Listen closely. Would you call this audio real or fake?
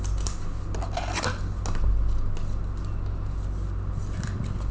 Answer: real